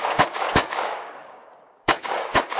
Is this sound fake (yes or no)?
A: yes